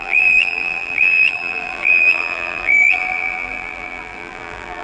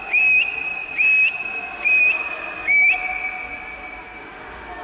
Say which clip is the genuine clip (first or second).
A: second